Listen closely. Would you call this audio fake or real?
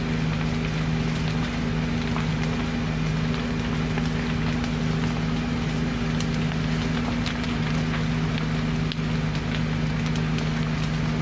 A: real